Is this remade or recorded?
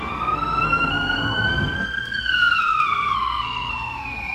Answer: remade